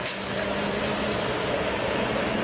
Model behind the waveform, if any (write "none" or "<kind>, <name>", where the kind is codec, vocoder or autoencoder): none